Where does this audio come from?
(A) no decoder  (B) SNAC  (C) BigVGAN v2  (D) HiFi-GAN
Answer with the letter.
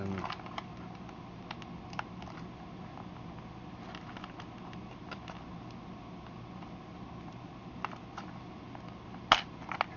A